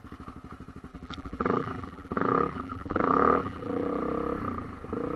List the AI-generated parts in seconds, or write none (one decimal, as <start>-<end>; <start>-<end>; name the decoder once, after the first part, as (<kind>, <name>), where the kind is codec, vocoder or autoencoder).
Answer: 0.9-4.0 (vocoder, BigVGAN v2)